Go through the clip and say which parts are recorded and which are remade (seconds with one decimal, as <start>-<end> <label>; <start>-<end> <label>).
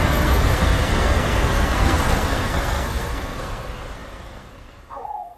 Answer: 0.0-5.4 remade